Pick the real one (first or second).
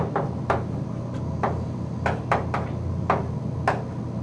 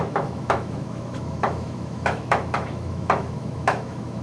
first